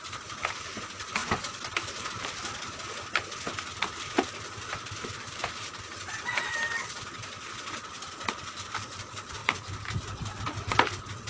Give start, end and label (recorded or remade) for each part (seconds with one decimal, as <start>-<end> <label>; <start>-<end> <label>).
0.0-1.2 recorded; 1.2-2.1 remade; 2.1-11.3 recorded